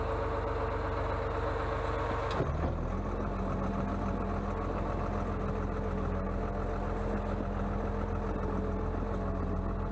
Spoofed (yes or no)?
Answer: no